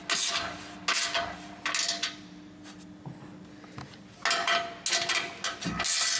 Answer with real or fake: real